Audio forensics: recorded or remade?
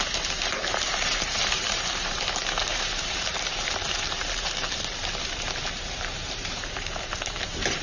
remade